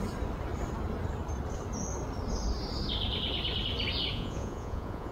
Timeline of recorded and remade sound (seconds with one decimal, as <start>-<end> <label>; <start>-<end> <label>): 0.0-4.1 recorded; 4.1-5.1 remade